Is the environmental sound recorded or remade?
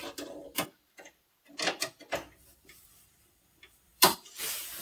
remade